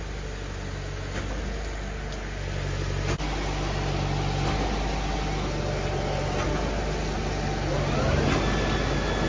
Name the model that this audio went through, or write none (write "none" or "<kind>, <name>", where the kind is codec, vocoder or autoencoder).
none